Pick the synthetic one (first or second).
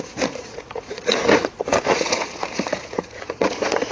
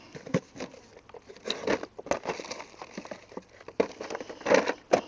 first